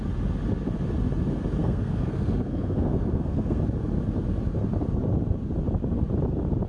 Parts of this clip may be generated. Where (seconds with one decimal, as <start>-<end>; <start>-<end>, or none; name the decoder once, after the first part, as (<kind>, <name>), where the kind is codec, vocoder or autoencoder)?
1.6-3.6 (codec, SNAC)